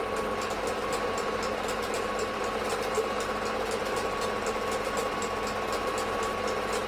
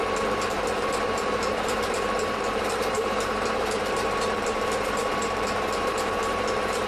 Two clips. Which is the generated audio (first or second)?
second